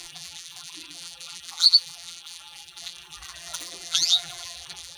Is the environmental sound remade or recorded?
remade